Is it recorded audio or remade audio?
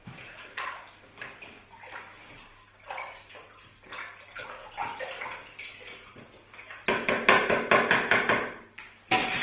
recorded